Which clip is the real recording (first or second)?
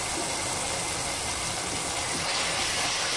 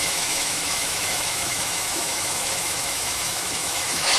first